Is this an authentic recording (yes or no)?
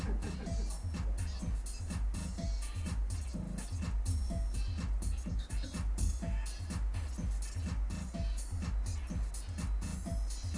yes